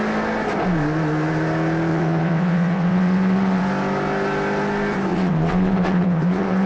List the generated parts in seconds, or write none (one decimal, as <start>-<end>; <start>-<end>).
1.9-3.6; 5.1-6.7